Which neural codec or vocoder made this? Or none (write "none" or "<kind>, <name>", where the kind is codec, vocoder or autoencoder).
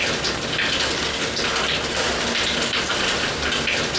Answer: none